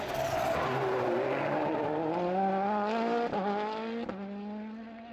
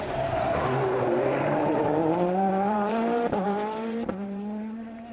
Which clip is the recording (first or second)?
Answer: first